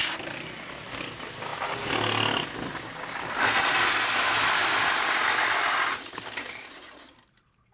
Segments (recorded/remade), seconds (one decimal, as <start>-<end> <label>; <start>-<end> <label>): 0.0-7.7 recorded